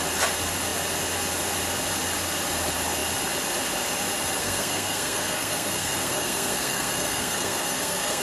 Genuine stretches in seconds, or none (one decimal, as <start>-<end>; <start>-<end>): 0.0-4.4